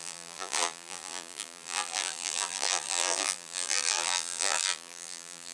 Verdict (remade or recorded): remade